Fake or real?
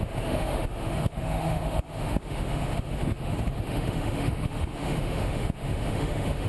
fake